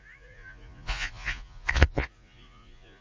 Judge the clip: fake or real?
fake